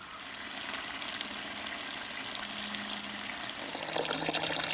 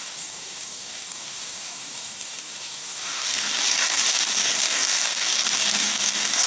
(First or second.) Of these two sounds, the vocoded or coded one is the second